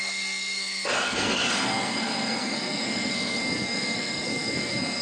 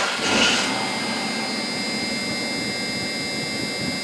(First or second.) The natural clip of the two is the second